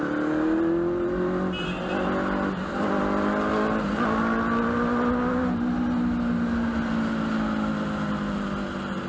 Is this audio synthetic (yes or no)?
no